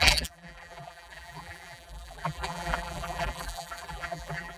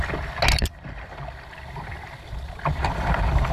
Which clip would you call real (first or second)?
second